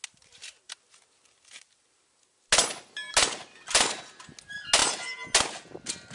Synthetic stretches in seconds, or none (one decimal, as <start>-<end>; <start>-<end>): none